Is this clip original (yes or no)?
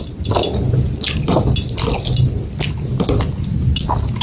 yes